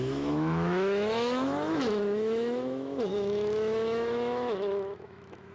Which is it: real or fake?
fake